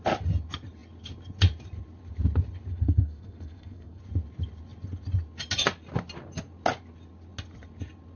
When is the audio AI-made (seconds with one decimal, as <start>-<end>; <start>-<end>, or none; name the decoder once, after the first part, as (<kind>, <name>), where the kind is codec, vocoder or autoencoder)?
2.7-4.0 (codec, SNAC)